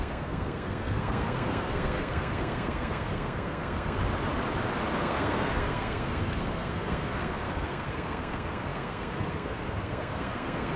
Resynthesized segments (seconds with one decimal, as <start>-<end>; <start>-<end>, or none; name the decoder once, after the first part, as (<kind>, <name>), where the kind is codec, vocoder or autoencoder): 0.0-4.0 (codec, SNAC); 5.0-10.8